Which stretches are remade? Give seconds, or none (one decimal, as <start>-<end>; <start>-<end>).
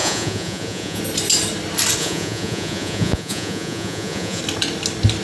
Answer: 0.0-1.0; 2.0-4.4